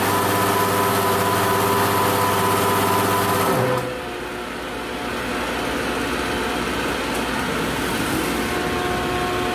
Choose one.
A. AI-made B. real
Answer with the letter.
B